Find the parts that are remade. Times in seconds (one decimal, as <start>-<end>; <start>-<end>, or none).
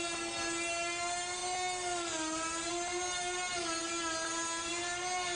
none